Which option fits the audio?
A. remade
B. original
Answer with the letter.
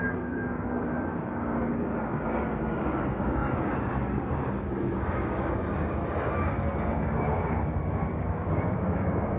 A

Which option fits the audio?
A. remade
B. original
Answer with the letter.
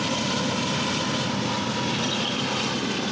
B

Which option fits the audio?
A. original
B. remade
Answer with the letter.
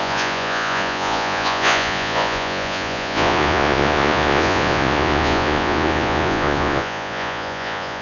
B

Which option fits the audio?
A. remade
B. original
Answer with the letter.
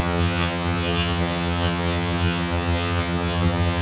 A